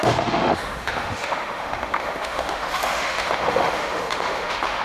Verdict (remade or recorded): remade